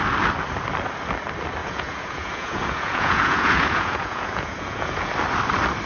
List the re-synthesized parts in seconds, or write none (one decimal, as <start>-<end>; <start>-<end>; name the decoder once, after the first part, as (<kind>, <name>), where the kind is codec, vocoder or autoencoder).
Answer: 1.6-5.1 (vocoder, Vocos)